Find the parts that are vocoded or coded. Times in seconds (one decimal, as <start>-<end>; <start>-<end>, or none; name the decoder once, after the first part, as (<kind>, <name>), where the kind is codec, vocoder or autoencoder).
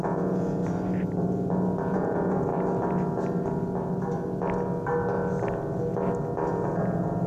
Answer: 0.0-0.6 (vocoder, Vocos); 1.8-2.5; 6.5-7.3